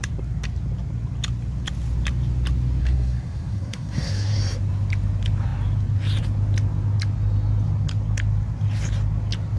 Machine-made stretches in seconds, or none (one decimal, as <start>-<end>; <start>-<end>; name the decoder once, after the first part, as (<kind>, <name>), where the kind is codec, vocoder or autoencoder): 2.8-4.4 (codec, SNAC)